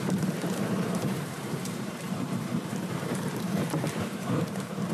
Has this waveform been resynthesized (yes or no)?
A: yes